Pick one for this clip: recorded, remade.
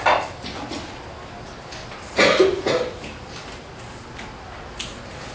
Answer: recorded